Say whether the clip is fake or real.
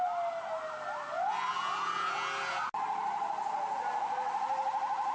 real